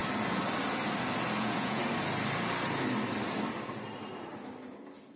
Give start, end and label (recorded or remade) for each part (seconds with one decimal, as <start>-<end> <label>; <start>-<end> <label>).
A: 0.0-1.4 recorded; 1.4-1.8 remade; 1.8-5.2 recorded